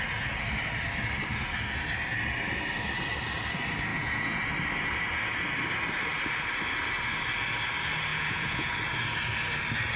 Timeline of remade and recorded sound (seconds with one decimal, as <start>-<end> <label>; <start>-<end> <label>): 0.0-3.9 recorded; 3.9-4.4 remade; 4.4-8.1 recorded; 8.1-8.7 remade; 8.7-10.0 recorded